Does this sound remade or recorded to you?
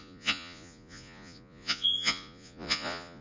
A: remade